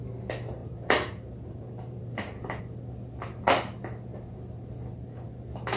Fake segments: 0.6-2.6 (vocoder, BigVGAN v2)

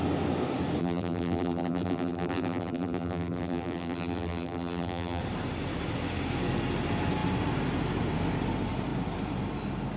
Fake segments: 0.8-5.2 (vocoder, BigVGAN v2)

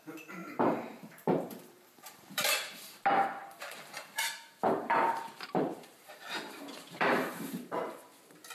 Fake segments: 0.4-3.0 (vocoder, BigVGAN v2); 3.4-7.8